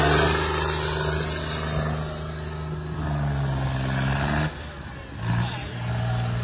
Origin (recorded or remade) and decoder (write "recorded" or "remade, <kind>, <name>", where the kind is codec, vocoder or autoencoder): recorded